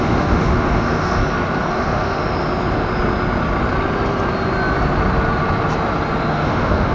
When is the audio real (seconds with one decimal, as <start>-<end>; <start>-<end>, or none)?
1.2-1.7; 2.2-6.3